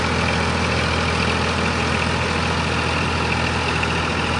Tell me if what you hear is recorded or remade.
recorded